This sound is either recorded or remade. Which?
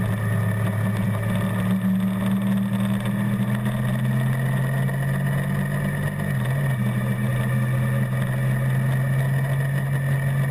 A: recorded